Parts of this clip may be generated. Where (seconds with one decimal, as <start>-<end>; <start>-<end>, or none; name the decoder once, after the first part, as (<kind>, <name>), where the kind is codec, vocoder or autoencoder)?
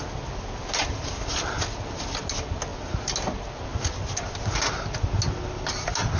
none